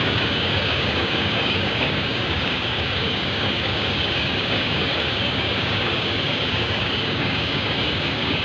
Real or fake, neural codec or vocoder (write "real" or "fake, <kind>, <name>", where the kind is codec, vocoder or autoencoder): fake, codec, DAC